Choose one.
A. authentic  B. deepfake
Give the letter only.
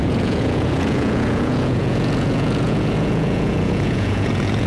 B